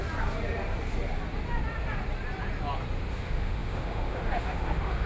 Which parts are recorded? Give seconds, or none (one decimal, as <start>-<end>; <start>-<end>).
0.0-3.1